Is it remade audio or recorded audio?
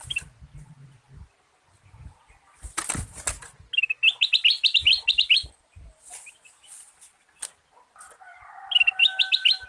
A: recorded